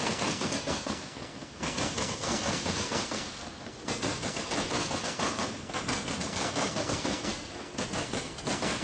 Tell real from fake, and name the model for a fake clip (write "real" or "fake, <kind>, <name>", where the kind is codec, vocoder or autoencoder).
fake, codec, SNAC